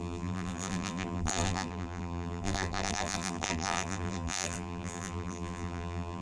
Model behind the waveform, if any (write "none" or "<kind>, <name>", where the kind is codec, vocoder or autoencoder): vocoder, BigVGAN v2